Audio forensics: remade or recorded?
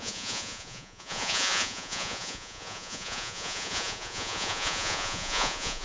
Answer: remade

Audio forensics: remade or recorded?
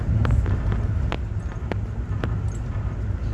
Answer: recorded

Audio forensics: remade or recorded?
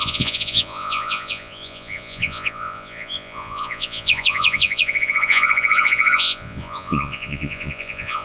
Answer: remade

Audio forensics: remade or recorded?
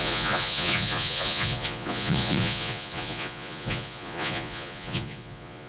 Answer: remade